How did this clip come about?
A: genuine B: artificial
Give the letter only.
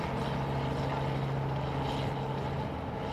A